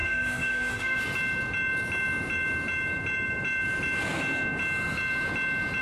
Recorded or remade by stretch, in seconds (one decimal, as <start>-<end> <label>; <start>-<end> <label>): 0.0-1.0 remade; 1.0-5.8 recorded